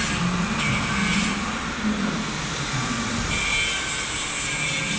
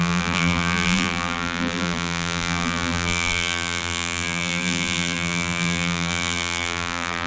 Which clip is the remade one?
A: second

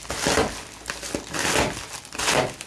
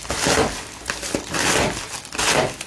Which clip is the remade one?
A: second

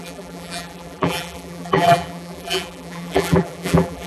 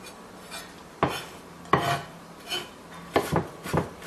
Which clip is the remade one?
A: first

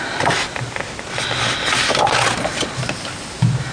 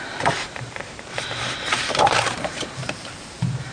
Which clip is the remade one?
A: second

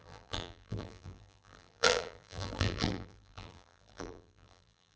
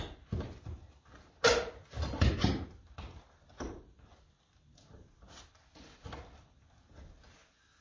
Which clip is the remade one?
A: first